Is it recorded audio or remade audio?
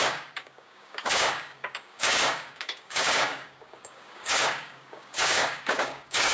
remade